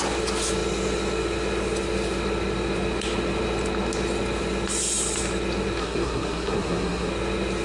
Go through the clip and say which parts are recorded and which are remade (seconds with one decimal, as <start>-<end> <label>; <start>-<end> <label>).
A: 0.0-5.8 recorded; 5.8-7.1 remade; 7.1-7.6 recorded